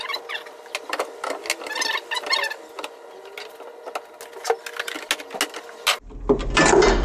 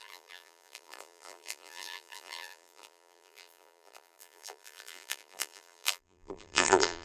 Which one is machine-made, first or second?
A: second